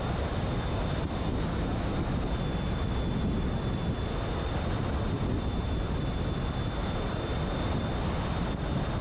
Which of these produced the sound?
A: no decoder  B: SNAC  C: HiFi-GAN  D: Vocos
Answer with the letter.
A